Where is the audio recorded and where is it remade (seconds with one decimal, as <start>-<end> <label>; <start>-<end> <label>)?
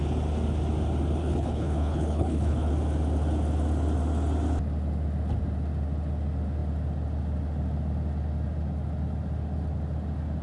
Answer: 0.0-1.2 recorded; 1.2-2.7 remade; 2.7-10.4 recorded